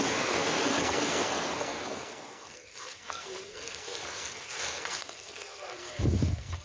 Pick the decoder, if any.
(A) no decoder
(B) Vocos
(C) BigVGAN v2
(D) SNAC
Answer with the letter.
D